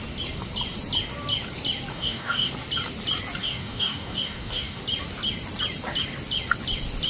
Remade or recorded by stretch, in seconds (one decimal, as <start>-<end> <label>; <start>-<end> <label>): 0.0-1.9 recorded; 1.9-2.5 remade; 2.5-3.4 recorded; 3.4-4.8 remade; 4.8-7.1 recorded

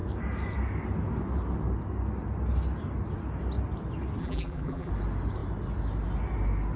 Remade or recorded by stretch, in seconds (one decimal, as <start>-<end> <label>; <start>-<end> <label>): 0.0-4.2 recorded; 4.2-4.9 remade; 4.9-6.8 recorded

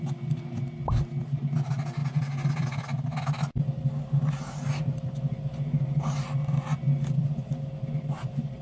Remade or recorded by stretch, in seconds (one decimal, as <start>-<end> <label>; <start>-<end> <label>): 0.0-8.6 recorded

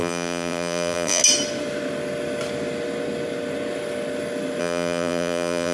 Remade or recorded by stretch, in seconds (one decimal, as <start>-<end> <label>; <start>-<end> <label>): 0.0-1.2 remade; 1.2-4.6 recorded; 4.6-5.7 remade